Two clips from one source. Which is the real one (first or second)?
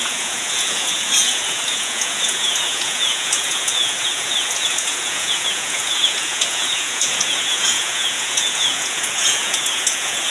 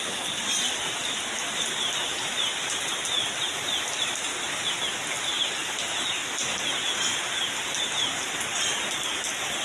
second